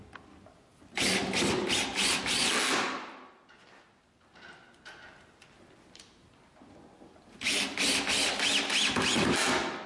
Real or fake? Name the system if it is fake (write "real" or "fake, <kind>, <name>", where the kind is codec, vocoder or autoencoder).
real